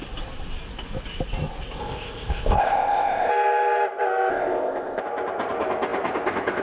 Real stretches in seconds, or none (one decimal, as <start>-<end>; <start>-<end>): 0.0-1.8; 3.3-4.3; 5.0-6.6